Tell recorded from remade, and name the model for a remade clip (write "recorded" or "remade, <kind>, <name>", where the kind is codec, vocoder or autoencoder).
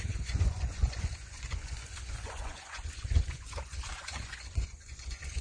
remade, vocoder, Vocos